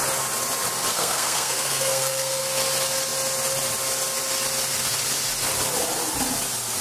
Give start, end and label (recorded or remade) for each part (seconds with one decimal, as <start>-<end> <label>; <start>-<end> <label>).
0.0-0.9 recorded; 0.9-2.4 remade; 2.4-6.8 recorded